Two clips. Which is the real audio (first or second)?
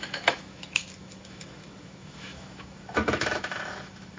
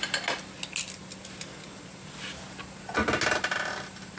second